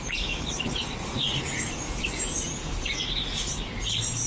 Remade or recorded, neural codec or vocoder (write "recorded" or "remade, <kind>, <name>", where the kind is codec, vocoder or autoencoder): remade, vocoder, BigVGAN v2